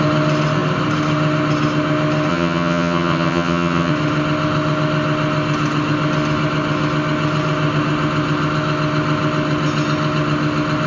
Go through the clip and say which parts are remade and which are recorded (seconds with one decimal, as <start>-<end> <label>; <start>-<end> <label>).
0.0-2.3 recorded; 2.3-3.9 remade; 3.9-10.9 recorded